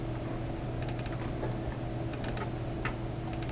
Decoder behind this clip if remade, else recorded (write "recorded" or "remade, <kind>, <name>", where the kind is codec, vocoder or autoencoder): recorded